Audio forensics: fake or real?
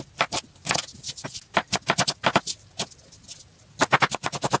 real